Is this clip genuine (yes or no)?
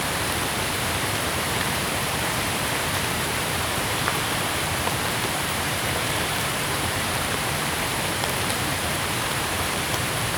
no